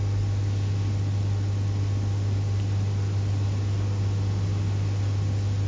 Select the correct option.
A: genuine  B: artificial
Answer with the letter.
A